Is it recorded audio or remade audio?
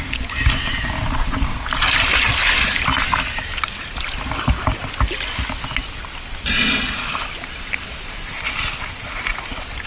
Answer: recorded